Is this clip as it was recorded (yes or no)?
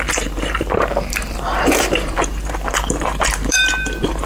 no